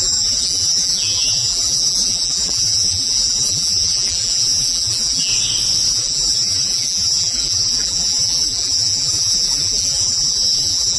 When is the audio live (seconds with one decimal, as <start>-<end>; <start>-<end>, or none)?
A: 5.3-5.9